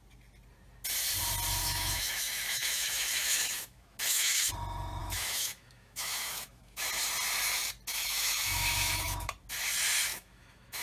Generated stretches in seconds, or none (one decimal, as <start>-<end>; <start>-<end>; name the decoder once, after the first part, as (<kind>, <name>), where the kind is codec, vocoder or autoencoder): 1.6-4.5 (autoencoder, DAC-VAE); 5.0-6.9; 7.9-9.3; 10.1-10.8